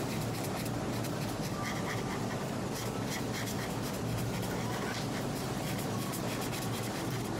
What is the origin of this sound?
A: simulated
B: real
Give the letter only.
B